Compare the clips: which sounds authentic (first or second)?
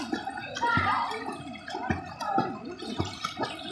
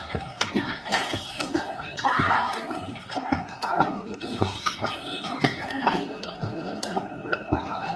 first